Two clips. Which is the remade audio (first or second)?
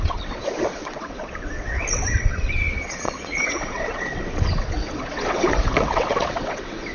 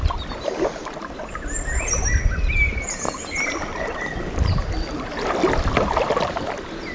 first